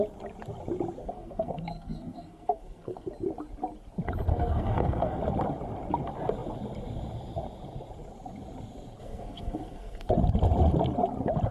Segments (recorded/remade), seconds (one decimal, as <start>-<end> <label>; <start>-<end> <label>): 0.0-1.0 recorded; 1.0-3.1 remade; 3.1-4.3 recorded; 4.3-5.2 remade; 5.2-9.0 recorded; 9.0-10.1 remade; 10.1-11.5 recorded